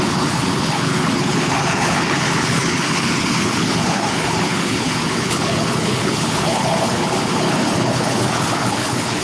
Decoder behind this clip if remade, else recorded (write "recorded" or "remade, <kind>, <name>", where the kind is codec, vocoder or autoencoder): remade, codec, HILCodec